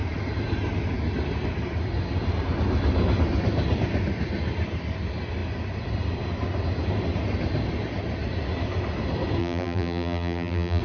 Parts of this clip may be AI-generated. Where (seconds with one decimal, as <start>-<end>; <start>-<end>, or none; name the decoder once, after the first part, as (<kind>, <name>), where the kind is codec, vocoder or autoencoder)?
9.4-10.8 (vocoder, BigVGAN v2)